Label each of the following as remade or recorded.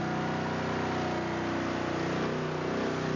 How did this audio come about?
recorded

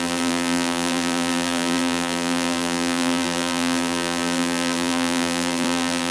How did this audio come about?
remade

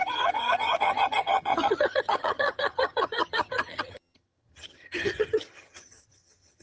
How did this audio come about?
remade